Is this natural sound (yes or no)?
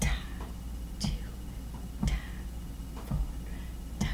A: yes